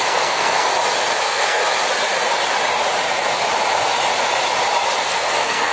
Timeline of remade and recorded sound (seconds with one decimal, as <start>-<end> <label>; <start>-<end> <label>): 0.0-0.7 remade; 0.7-1.2 recorded; 1.2-1.6 remade; 1.6-5.0 recorded; 5.0-5.7 remade